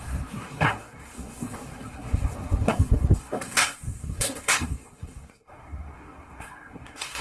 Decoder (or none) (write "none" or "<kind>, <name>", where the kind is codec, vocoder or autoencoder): codec, SNAC